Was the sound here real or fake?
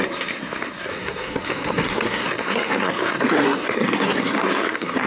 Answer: fake